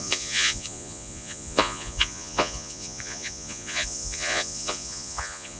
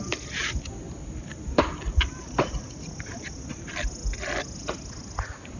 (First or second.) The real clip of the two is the second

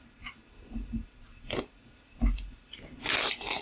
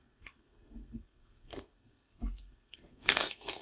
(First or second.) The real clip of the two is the first